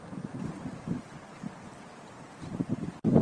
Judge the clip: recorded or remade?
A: recorded